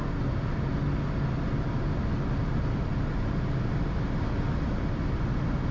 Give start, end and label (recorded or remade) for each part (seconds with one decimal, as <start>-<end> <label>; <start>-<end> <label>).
0.0-5.7 recorded